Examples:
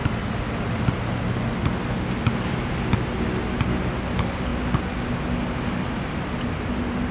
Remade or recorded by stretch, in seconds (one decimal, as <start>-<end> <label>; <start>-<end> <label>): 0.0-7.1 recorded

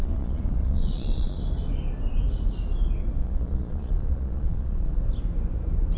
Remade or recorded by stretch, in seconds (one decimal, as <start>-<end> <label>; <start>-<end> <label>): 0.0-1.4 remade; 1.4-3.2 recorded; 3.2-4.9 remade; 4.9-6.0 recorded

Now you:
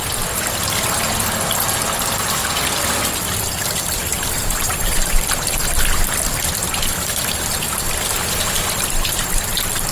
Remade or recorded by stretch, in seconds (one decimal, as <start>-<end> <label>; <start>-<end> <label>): 0.0-4.1 recorded; 4.1-6.1 remade; 6.1-9.9 recorded